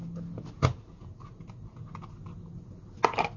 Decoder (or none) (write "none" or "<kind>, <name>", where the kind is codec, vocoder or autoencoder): none